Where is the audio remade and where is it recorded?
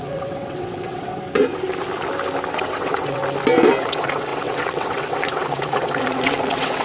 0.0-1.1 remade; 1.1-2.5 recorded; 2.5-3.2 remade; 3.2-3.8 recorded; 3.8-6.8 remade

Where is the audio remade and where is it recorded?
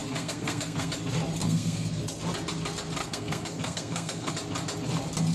0.0-0.9 remade; 0.9-1.4 recorded; 1.4-2.0 remade; 2.0-3.0 recorded; 3.0-4.3 remade; 4.3-5.3 recorded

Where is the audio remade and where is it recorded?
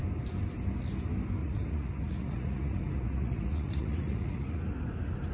0.0-1.4 recorded; 1.4-4.6 remade; 4.6-5.3 recorded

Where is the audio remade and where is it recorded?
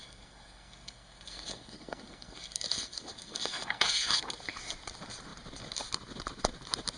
0.0-4.2 remade; 4.2-7.0 recorded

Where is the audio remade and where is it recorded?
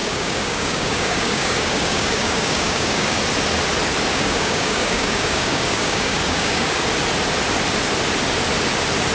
0.0-3.2 remade; 3.2-4.1 recorded; 4.1-6.9 remade; 6.9-9.1 recorded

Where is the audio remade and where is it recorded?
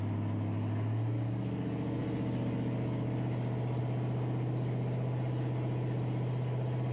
0.0-6.9 recorded